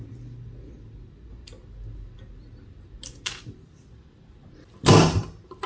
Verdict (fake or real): real